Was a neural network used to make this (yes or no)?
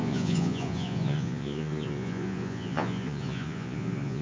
yes